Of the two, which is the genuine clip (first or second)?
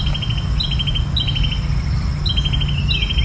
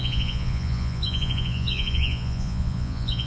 first